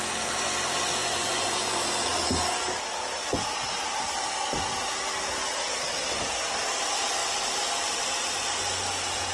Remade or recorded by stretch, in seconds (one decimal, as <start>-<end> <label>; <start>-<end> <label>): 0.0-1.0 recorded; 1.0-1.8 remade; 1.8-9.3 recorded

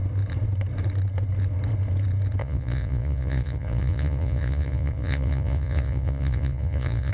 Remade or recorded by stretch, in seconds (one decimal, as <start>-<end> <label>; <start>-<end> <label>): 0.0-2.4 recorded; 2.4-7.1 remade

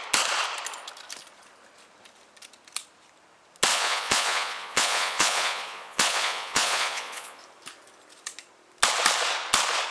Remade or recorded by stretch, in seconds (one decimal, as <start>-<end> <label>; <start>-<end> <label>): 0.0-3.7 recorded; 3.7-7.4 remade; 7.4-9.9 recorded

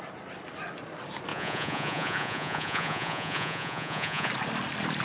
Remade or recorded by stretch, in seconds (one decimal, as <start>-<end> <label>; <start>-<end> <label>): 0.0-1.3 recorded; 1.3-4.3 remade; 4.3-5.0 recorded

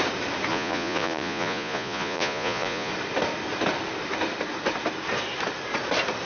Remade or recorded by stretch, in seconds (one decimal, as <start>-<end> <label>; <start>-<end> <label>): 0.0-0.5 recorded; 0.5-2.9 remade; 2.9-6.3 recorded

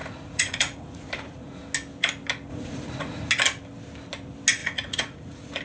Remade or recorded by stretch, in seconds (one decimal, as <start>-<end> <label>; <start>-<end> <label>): 0.0-1.5 remade; 1.5-2.5 recorded; 2.5-3.3 remade; 3.3-4.6 recorded; 4.6-5.6 remade